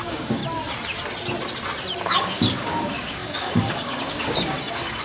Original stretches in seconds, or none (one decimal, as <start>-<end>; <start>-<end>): 0.4-2.0